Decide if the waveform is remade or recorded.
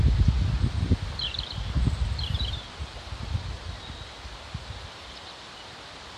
remade